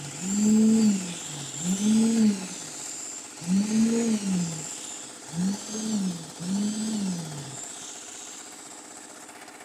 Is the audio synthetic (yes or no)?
no